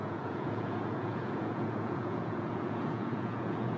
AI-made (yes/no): yes